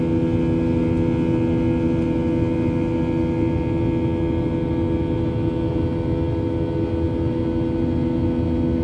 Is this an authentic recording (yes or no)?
yes